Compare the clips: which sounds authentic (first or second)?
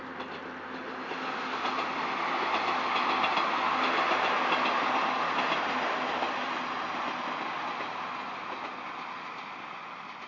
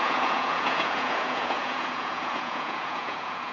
first